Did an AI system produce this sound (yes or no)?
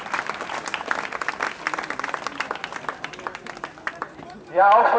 no